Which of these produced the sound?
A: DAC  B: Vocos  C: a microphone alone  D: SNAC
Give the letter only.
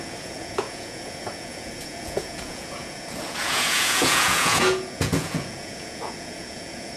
B